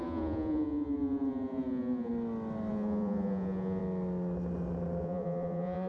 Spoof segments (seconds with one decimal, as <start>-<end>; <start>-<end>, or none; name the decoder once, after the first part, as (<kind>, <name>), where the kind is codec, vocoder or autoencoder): 0.0-2.1 (vocoder, Vocos); 2.7-3.8; 5.0-5.9

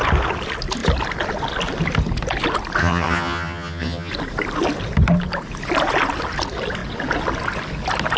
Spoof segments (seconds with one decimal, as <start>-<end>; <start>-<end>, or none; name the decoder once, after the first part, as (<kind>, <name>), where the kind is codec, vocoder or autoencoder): 2.8-4.1 (vocoder, HiFi-GAN)

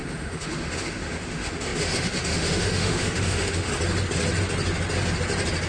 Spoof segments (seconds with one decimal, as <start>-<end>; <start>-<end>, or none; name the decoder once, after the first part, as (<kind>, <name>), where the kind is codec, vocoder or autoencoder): 0.0-3.7 (autoencoder, DAC-VAE)

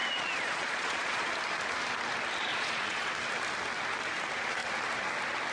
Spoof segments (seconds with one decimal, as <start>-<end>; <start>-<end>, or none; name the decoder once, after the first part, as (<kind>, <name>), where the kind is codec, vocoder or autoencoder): 0.0-1.3 (vocoder, Vocos); 2.5-3.1

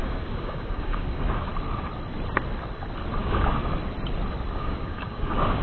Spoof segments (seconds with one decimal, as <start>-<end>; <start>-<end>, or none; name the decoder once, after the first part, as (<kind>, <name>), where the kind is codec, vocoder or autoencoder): 0.0-1.5 (codec, DAC); 3.2-3.6; 4.5-5.6

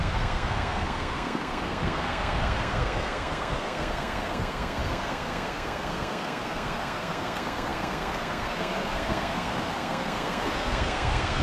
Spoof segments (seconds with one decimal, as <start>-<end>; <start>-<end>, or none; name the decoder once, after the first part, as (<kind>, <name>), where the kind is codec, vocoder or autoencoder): 0.0-11.4 (codec, SNAC)

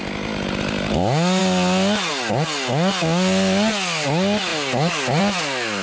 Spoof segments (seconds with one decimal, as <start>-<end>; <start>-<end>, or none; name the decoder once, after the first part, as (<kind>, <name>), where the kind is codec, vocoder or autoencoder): none